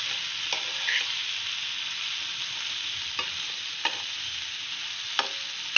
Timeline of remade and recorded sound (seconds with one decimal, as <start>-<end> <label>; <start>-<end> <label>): 0.0-5.8 recorded